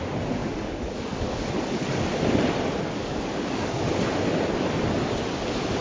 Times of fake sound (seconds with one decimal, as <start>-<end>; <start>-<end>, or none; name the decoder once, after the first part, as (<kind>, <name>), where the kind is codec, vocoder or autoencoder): 0.4-1.5 (codec, DAC); 3.0-4.0